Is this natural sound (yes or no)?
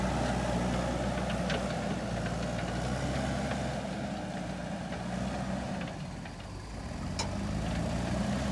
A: yes